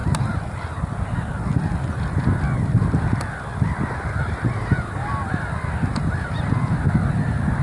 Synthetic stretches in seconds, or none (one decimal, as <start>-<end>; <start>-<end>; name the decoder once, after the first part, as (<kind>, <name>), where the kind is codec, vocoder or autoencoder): none

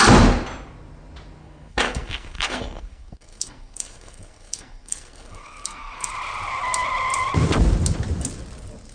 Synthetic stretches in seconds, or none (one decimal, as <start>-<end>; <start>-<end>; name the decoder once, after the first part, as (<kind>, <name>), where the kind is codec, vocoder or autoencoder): 1.4-6.1 (codec, SNAC)